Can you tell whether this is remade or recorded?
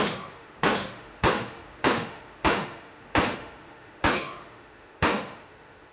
remade